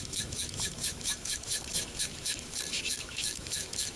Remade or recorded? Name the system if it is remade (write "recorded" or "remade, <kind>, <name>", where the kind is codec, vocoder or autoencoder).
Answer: remade, autoencoder, DAC-VAE